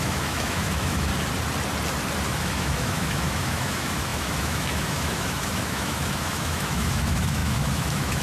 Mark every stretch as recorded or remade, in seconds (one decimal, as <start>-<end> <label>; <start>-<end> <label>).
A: 0.0-1.1 remade; 1.1-2.2 recorded; 2.2-8.2 remade